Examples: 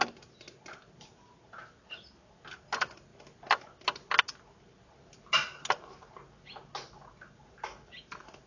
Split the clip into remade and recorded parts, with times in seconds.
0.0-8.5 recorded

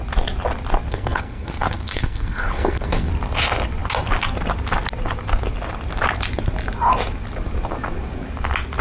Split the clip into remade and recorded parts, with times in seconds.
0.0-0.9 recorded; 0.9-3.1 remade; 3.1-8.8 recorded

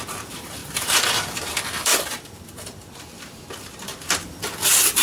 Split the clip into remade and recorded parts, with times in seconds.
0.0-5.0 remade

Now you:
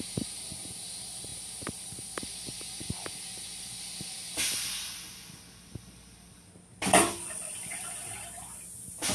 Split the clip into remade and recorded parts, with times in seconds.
0.0-9.1 recorded

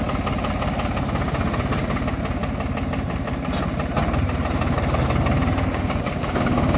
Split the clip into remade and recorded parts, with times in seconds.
0.0-5.7 recorded; 5.7-6.8 remade

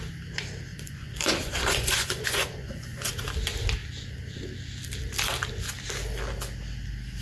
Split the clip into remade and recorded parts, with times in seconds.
0.0-0.7 recorded; 0.7-3.1 remade; 3.1-7.2 recorded